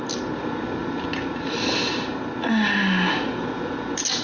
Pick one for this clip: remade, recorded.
recorded